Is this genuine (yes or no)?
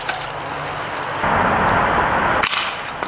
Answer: yes